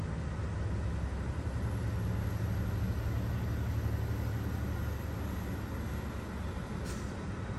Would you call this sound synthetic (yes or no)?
no